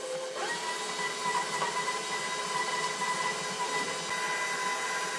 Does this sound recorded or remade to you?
recorded